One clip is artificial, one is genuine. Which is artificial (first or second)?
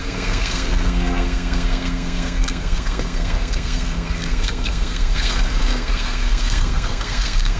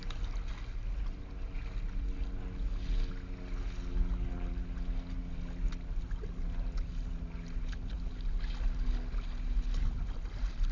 first